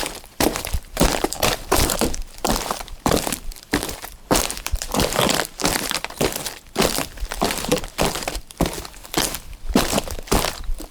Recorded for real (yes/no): no